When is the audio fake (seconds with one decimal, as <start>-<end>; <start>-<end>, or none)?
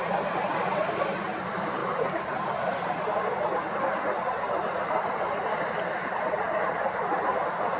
none